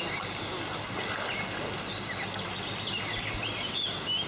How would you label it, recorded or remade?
recorded